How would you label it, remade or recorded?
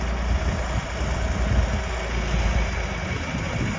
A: recorded